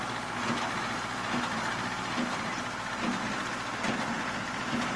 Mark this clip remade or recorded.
recorded